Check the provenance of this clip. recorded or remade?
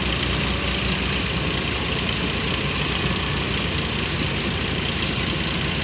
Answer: recorded